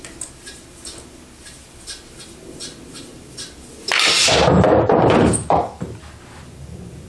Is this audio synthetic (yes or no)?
no